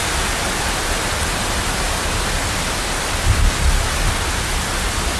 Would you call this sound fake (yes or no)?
no